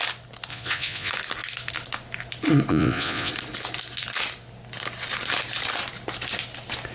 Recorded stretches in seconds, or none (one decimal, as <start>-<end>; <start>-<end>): 0.0-0.5; 1.1-2.7; 3.3-6.9